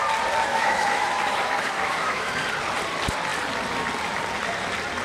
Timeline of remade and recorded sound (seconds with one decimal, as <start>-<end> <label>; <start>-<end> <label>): 0.0-0.5 recorded; 0.5-2.3 remade; 2.3-5.0 recorded